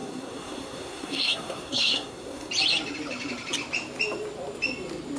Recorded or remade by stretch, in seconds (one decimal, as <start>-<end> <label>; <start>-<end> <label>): 0.0-2.5 remade; 2.5-5.2 recorded